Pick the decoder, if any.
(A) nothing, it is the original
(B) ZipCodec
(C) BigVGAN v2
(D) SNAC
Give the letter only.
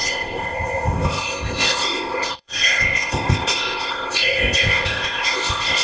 B